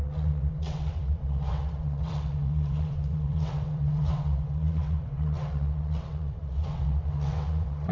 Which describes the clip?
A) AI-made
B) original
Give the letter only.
A